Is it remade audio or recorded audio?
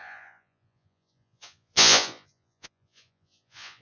remade